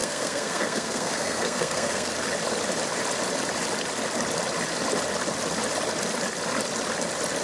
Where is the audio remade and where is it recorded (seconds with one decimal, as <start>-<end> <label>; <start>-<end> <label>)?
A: 0.0-2.1 remade; 2.1-7.4 recorded